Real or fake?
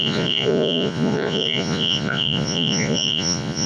fake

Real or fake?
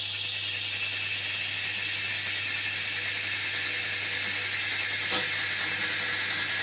real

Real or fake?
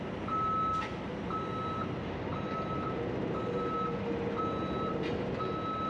real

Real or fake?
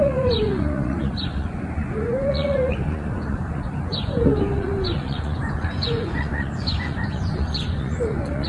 fake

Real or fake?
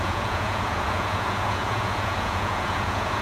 fake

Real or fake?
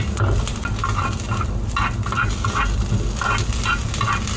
real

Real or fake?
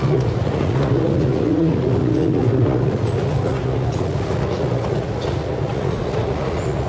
fake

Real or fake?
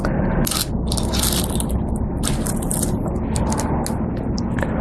real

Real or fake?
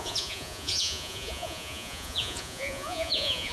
fake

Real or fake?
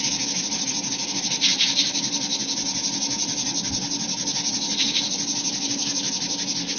real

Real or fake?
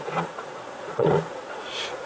fake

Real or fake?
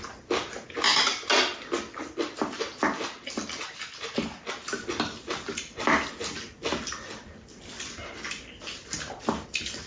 real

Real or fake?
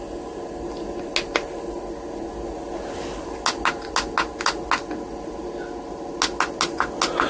real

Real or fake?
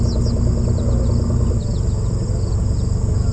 real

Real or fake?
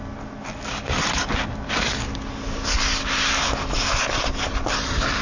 real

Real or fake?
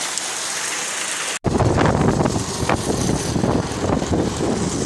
real